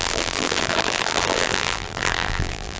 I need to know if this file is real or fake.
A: fake